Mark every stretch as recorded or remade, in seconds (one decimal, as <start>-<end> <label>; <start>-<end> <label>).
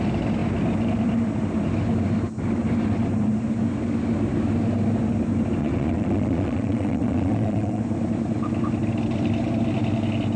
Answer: 0.0-5.6 recorded; 5.6-7.8 remade; 7.8-10.4 recorded